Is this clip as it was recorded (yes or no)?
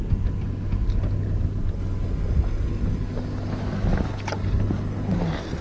yes